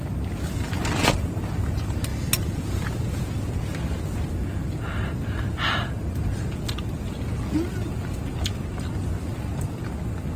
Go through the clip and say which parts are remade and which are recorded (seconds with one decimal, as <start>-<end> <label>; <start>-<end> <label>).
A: 0.0-10.4 recorded